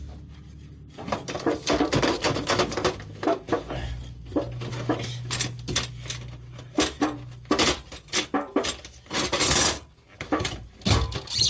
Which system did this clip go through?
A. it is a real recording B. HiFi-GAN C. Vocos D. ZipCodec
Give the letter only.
A